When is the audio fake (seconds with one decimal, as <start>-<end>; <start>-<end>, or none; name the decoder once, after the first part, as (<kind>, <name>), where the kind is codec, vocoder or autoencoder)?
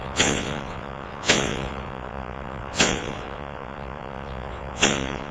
0.0-5.3 (vocoder, WaveNeXt)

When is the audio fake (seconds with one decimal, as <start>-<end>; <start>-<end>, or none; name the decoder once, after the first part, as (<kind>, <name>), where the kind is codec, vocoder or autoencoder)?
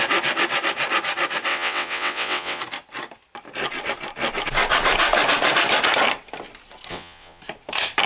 1.5-2.6 (vocoder, WaveNeXt); 6.9-7.4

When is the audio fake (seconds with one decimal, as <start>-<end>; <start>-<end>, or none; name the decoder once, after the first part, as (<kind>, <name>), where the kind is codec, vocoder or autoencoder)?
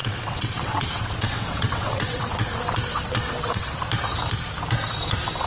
0.0-2.5 (vocoder, WaveNeXt); 2.9-3.7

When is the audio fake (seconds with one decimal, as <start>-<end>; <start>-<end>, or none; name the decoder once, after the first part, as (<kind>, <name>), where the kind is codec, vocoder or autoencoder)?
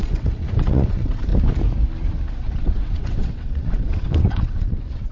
0.0-1.3 (vocoder, WaveNeXt); 2.3-5.1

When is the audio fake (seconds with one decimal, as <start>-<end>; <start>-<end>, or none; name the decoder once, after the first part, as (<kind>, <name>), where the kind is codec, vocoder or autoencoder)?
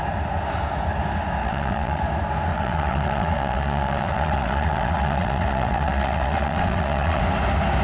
1.4-2.0 (vocoder, WaveNeXt); 2.5-7.2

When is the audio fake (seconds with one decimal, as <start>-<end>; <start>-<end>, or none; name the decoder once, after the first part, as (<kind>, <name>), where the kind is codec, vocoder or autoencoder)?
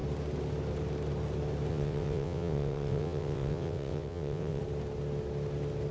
1.7-4.6 (vocoder, WaveNeXt)